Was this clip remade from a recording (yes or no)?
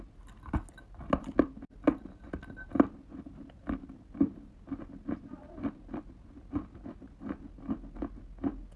no